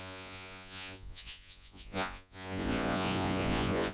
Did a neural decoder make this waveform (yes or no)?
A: yes